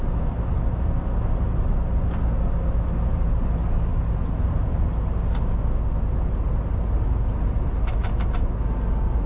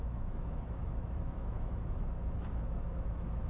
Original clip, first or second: first